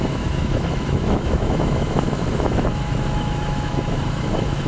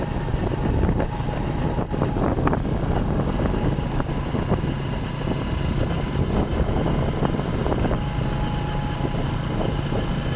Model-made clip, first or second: first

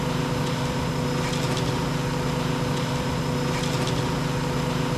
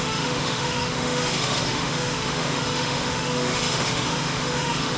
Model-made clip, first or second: second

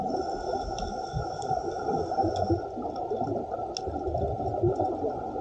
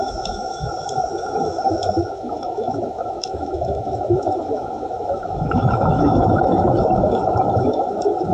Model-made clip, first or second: second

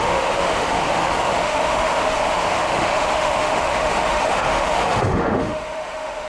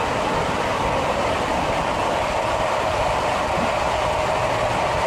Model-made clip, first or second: first